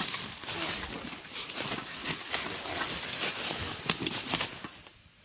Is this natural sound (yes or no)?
yes